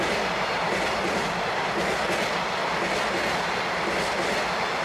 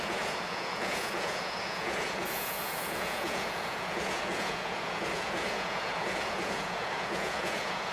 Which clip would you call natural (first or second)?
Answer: first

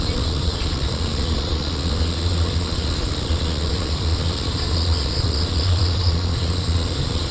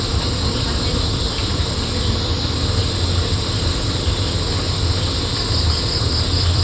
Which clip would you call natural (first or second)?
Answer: second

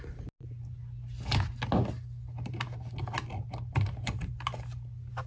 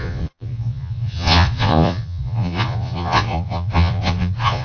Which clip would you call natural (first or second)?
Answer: first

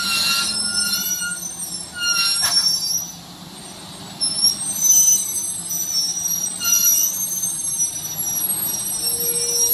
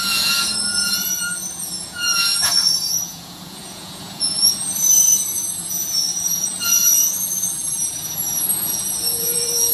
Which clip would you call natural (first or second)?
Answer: first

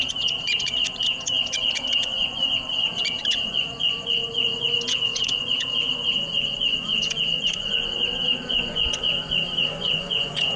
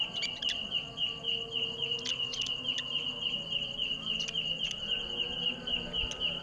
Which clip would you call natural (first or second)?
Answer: second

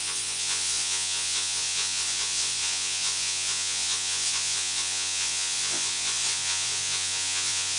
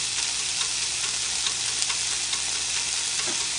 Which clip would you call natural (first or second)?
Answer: second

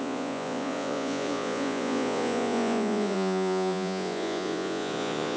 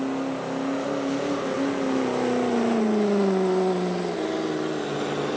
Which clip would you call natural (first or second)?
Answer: second